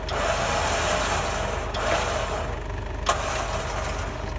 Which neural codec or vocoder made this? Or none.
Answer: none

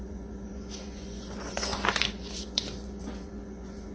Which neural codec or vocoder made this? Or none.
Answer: vocoder, Vocos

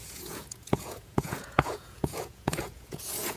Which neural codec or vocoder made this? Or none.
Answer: vocoder, Vocos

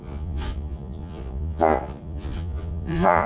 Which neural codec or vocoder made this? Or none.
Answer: vocoder, Vocos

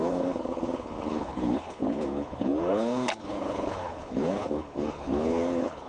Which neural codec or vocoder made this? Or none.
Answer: codec, HILCodec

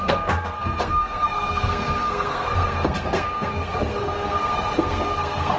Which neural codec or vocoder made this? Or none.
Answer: codec, SNAC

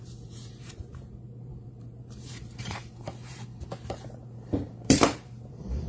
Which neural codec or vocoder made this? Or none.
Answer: vocoder, BigVGAN v2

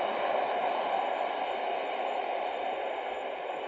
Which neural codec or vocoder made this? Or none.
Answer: none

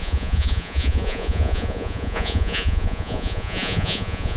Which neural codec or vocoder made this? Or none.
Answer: vocoder, Vocos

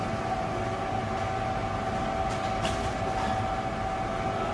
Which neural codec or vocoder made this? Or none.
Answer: none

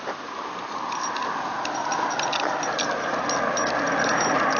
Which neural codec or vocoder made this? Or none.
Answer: none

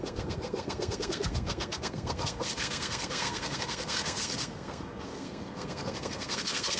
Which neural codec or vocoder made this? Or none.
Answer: codec, SNAC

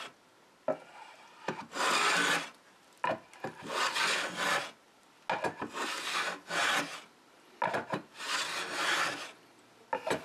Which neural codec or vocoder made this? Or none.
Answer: none